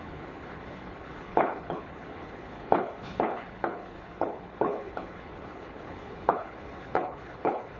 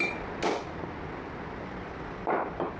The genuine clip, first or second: second